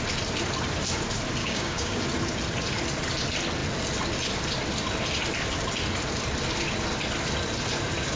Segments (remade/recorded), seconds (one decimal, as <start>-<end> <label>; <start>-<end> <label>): 0.0-1.4 recorded; 1.4-2.0 remade; 2.0-8.2 recorded